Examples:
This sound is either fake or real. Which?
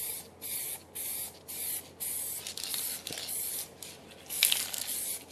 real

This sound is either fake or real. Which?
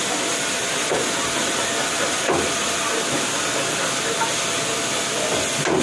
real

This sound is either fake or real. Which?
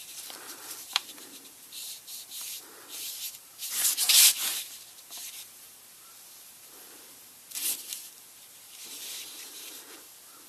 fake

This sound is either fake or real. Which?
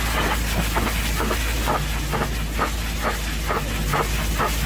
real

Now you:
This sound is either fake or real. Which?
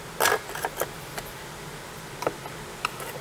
real